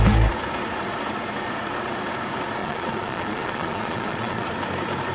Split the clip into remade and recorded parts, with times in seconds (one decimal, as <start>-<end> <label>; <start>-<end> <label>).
0.0-2.6 recorded; 2.6-4.5 remade; 4.5-5.1 recorded